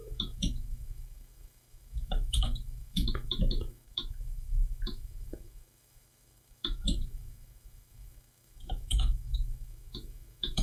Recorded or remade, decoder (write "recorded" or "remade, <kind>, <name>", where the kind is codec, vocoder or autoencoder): remade, autoencoder, DAC-VAE